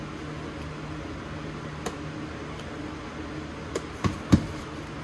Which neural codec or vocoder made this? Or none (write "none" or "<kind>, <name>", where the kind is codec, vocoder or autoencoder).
none